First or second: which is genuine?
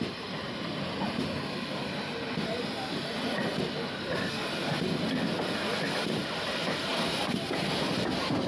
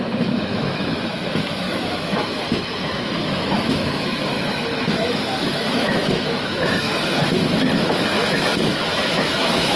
first